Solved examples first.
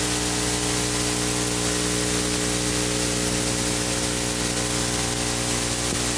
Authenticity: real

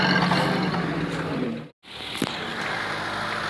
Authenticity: real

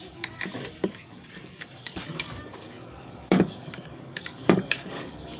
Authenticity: fake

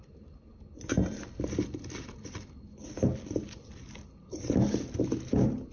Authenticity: real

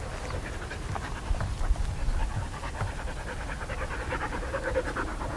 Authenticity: real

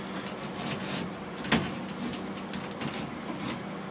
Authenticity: real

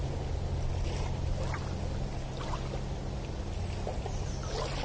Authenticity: real